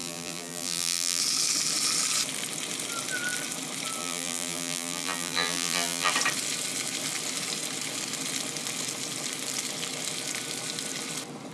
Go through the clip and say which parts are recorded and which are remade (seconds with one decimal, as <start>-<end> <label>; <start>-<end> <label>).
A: 0.0-1.2 remade; 1.2-4.0 recorded; 4.0-6.1 remade; 6.1-11.5 recorded